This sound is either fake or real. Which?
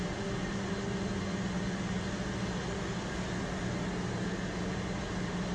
real